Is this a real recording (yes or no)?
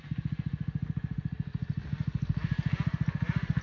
yes